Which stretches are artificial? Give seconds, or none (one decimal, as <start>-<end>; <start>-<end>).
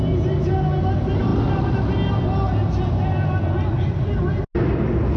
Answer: none